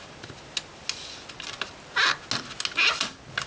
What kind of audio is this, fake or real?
real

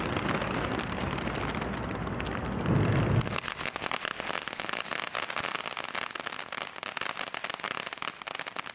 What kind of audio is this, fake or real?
real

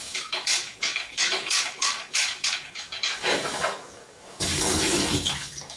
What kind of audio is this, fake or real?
fake